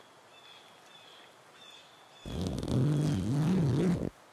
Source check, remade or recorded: recorded